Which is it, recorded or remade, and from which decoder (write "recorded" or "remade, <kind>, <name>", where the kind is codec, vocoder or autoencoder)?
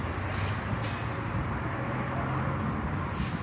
recorded